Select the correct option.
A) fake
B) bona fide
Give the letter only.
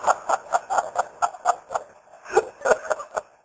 B